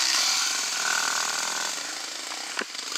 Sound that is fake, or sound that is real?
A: real